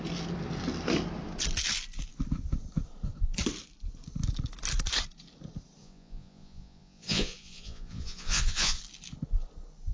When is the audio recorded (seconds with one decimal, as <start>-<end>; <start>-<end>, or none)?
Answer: 0.0-5.8; 8.8-9.9

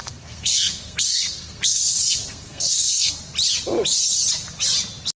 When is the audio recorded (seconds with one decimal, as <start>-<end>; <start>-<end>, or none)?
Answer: 3.1-5.2

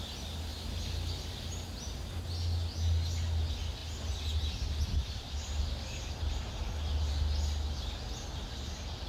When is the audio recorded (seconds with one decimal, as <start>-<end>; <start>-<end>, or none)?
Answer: 0.0-9.1

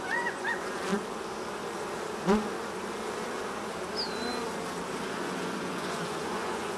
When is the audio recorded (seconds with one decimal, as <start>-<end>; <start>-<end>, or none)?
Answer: 0.9-5.0

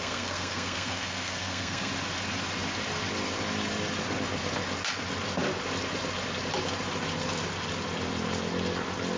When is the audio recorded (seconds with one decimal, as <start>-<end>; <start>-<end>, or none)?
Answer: 1.9-9.2

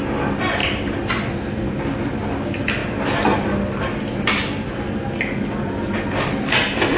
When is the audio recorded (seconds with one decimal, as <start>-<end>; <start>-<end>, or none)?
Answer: 0.0-0.6; 1.1-7.0

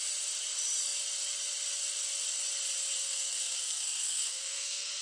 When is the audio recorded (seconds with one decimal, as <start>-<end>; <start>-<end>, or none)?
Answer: 0.0-3.0

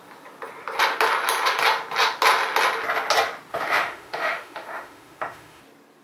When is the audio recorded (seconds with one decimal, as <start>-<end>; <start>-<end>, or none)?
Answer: 0.0-3.5; 5.6-6.0